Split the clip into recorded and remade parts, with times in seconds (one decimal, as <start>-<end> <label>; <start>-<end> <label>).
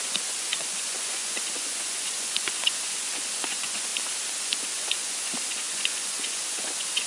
0.0-3.9 remade; 3.9-4.4 recorded; 4.4-7.1 remade